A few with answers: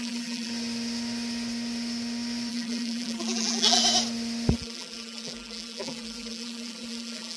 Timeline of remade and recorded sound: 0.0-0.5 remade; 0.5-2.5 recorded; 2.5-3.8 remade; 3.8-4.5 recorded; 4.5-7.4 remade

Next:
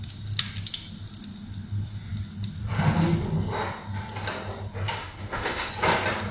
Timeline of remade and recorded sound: 0.0-5.0 recorded; 5.0-5.7 remade; 5.7-6.3 recorded

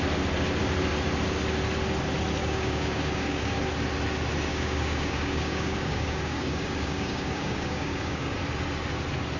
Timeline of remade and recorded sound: 0.0-2.4 recorded; 2.4-3.6 remade; 3.6-4.5 recorded; 4.5-8.4 remade; 8.4-9.4 recorded

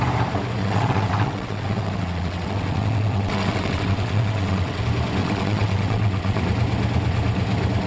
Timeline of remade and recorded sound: 0.0-0.6 recorded; 0.6-4.8 remade; 4.8-5.2 recorded; 5.2-6.4 remade; 6.4-7.9 recorded

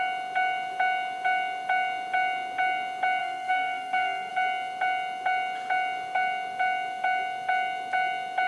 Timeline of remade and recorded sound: 0.0-3.2 recorded; 3.2-4.3 remade; 4.3-8.5 recorded